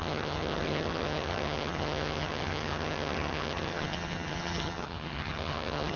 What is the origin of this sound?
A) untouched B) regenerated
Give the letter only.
B